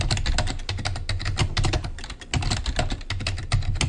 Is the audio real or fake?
real